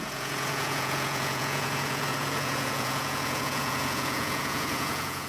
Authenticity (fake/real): fake